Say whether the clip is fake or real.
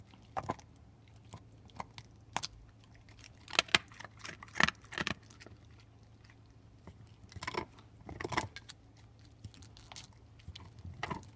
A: real